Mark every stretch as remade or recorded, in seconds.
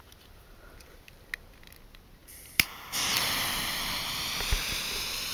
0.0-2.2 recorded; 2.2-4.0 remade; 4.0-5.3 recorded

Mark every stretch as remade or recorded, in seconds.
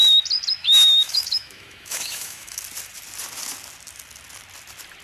0.0-0.6 recorded; 0.6-2.6 remade; 2.6-5.0 recorded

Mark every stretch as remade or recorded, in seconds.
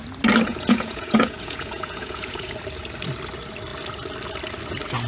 0.0-0.5 recorded; 0.5-2.5 remade; 2.5-5.1 recorded